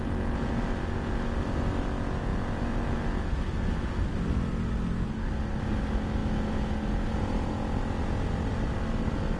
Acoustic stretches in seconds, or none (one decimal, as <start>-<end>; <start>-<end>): 0.0-9.4